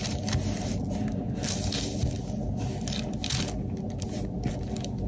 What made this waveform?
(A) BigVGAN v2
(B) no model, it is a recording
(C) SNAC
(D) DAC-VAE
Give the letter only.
B